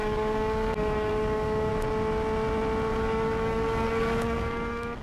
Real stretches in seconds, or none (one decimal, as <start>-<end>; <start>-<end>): 1.7-2.9